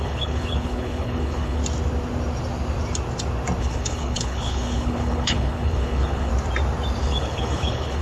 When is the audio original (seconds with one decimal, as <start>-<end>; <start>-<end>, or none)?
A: 1.6-3.6; 6.3-7.0

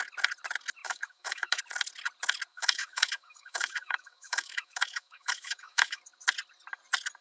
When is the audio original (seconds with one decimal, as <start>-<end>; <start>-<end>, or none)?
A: 0.0-0.8; 1.6-2.5; 6.0-7.2

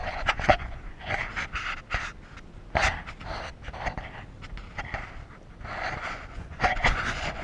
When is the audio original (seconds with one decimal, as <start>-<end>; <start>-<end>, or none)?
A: 1.3-5.7

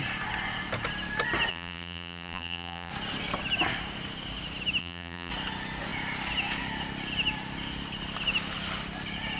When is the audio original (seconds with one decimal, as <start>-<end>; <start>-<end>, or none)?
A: 0.0-1.5; 2.9-4.8; 5.3-9.4

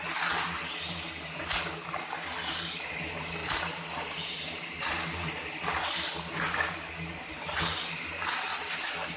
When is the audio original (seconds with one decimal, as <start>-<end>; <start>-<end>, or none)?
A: 0.0-9.2

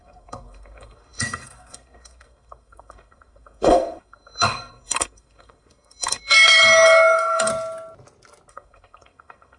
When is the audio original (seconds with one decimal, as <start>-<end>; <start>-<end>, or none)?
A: 7.5-8.5

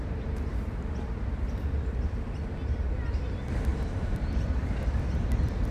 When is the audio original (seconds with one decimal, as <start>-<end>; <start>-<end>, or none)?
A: 0.0-3.7; 5.0-5.7